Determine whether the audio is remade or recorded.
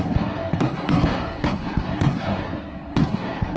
remade